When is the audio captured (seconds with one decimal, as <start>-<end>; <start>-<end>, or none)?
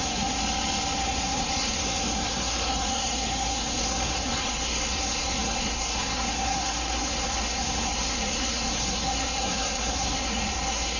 0.4-1.0